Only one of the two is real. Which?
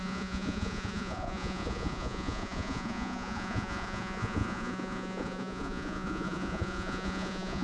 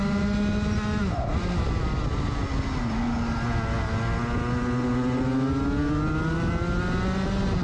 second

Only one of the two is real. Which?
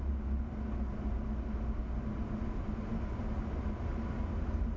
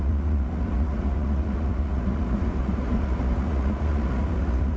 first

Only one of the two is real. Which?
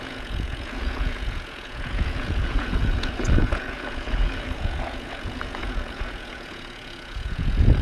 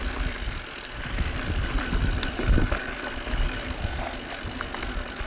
second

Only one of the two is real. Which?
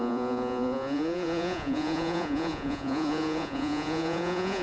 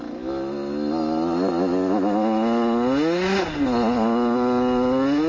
second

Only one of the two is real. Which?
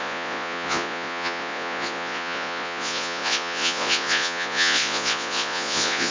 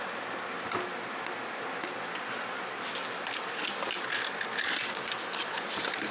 second